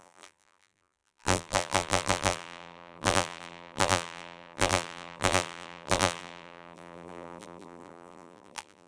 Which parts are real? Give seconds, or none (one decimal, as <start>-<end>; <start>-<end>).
none